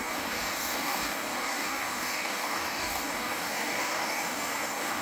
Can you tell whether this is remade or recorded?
remade